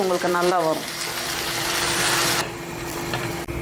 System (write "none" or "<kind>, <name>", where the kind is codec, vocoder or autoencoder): vocoder, BigVGAN v2